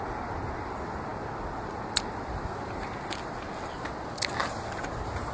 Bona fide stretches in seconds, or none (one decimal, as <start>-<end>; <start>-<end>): 0.0-5.3